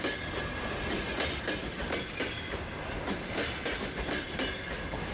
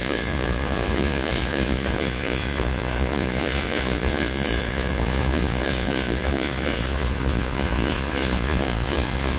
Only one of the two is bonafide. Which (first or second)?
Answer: first